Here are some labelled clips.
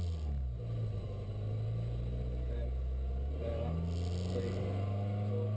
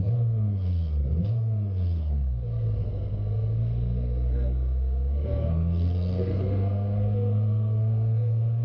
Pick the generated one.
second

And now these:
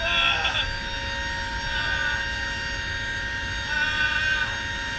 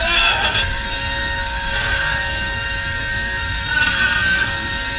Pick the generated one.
second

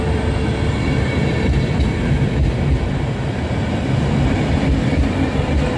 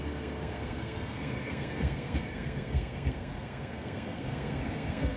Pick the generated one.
second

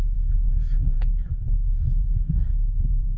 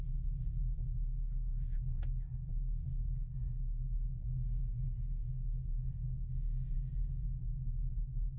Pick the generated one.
first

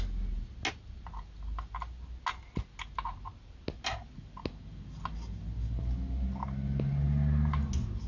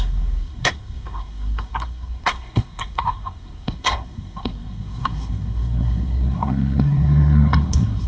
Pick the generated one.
second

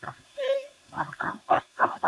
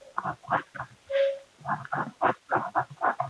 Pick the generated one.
first